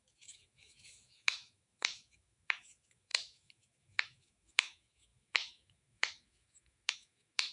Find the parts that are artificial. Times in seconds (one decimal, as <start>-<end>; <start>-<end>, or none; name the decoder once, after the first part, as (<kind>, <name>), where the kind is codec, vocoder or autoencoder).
0.0-7.5 (autoencoder, DAC-VAE)